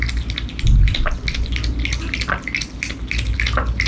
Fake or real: real